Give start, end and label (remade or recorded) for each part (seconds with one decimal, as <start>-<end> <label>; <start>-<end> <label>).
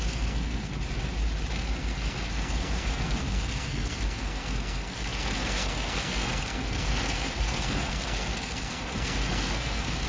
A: 0.0-0.7 remade; 0.7-1.5 recorded; 1.5-10.1 remade